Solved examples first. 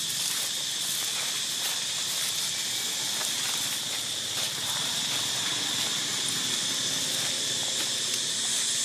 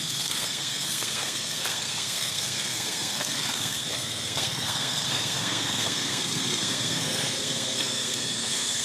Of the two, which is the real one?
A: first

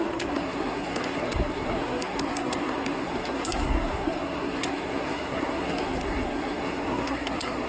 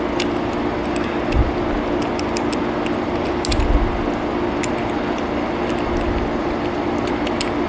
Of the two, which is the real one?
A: second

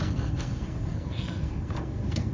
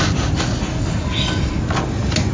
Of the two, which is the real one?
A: second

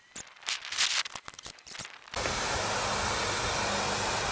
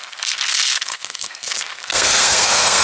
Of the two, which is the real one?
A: first